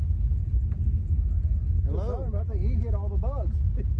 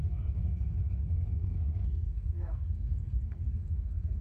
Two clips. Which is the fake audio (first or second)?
second